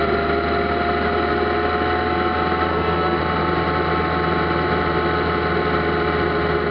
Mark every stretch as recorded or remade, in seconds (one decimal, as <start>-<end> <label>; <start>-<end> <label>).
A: 0.0-2.7 recorded; 2.7-3.2 remade; 3.2-6.7 recorded